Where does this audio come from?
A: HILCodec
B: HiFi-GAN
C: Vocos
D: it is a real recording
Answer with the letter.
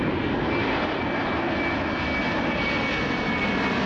D